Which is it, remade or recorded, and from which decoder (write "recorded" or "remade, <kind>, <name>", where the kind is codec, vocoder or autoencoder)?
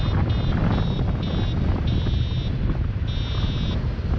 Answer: recorded